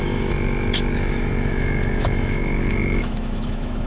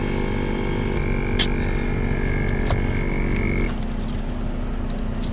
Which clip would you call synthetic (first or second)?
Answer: first